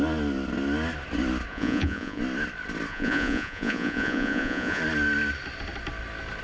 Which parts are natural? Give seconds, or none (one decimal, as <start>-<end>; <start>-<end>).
0.0-1.5; 2.2-2.9; 4.8-6.4